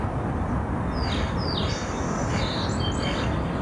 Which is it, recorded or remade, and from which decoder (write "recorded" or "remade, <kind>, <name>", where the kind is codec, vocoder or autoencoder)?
recorded